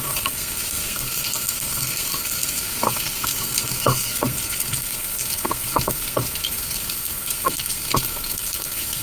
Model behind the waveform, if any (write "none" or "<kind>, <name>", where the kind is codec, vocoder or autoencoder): codec, SNAC